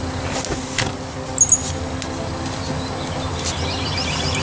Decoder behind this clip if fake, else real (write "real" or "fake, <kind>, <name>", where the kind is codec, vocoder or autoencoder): real